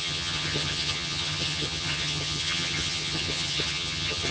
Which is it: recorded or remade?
remade